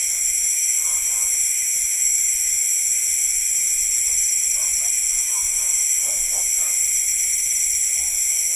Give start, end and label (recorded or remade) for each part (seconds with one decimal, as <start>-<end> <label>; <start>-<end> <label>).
0.0-3.5 remade; 3.5-4.9 recorded; 4.9-6.8 remade; 6.8-8.1 recorded; 8.1-8.6 remade